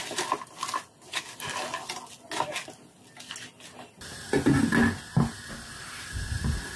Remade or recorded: recorded